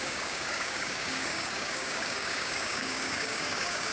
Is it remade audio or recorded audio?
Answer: remade